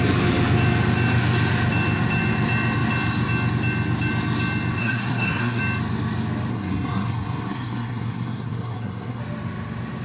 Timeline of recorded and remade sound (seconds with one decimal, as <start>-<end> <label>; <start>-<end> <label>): 0.0-4.8 recorded; 4.8-5.6 remade; 5.6-6.5 recorded; 6.5-9.2 remade; 9.2-10.0 recorded